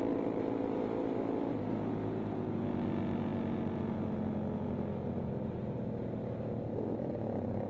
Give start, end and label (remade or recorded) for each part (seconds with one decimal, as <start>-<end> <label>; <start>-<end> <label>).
0.0-7.7 recorded